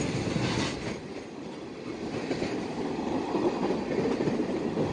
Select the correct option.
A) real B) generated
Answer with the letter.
A